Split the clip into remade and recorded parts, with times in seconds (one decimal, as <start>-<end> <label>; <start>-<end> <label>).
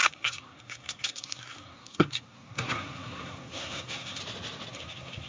0.0-4.2 remade; 4.2-4.7 recorded; 4.7-5.3 remade